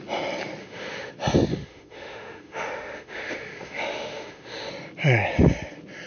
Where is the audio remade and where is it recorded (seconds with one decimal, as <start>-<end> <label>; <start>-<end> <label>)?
0.0-0.6 recorded; 0.6-1.1 remade; 1.1-1.5 recorded; 1.5-4.7 remade; 4.7-6.1 recorded